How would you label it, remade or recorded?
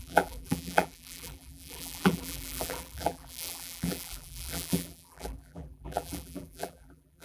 remade